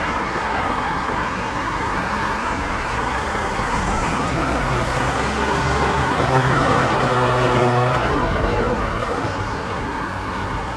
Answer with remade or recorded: remade